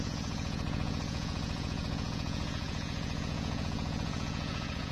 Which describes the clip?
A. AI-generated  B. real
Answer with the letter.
A